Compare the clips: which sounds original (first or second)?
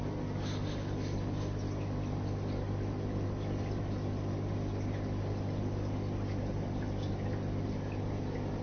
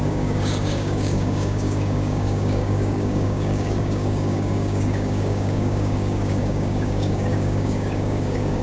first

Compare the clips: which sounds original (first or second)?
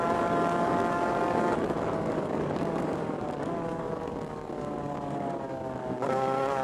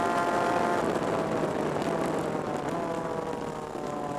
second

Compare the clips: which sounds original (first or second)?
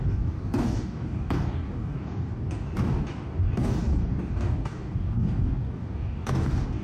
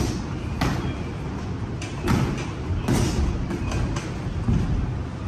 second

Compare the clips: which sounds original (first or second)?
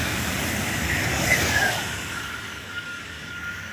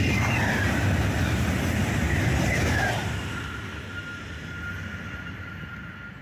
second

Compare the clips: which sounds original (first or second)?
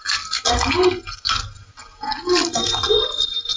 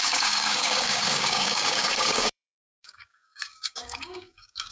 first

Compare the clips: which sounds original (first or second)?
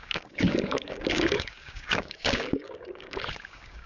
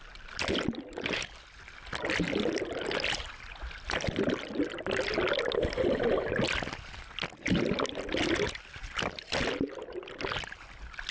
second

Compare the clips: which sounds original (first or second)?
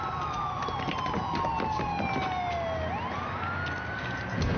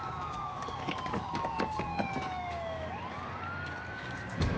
first